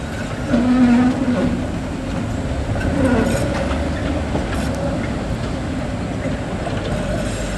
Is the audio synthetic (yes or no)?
no